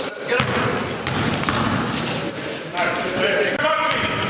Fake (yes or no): no